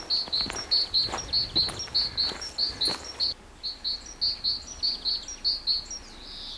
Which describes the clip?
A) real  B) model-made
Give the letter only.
A